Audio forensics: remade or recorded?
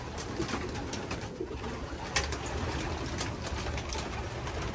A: recorded